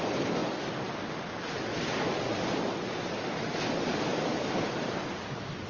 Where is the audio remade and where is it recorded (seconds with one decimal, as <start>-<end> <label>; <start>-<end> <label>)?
0.0-5.7 recorded